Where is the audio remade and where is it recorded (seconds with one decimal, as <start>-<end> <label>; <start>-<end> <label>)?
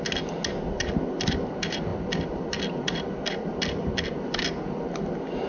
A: 0.0-5.5 recorded